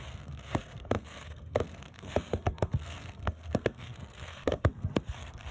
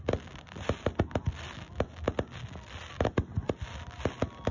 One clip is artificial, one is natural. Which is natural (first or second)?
second